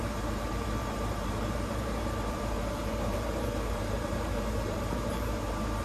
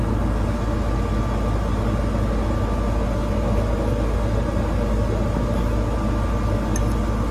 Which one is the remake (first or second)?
first